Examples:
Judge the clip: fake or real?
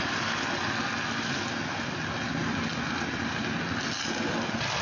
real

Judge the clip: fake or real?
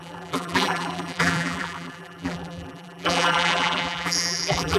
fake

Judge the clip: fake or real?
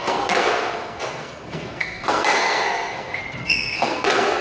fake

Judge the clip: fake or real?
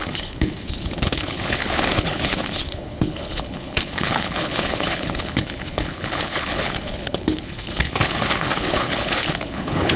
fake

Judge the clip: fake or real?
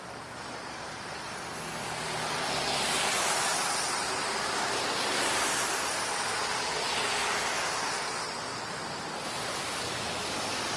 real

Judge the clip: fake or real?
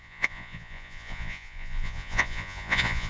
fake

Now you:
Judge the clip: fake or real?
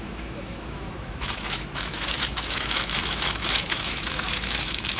fake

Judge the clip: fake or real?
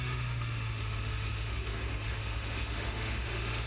fake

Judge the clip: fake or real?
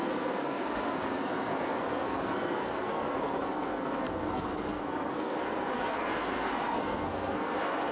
fake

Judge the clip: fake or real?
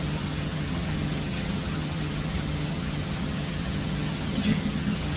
fake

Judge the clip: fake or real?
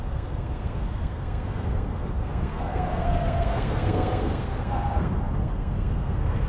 fake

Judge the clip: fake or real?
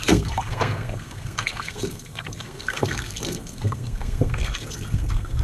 fake